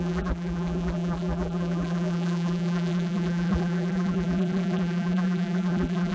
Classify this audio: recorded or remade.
remade